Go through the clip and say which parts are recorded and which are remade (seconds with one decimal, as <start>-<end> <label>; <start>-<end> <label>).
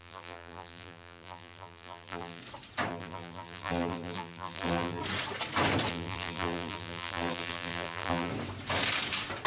0.0-2.4 remade; 2.4-2.9 recorded; 2.9-5.0 remade; 5.0-5.9 recorded; 5.9-8.3 remade; 8.3-9.5 recorded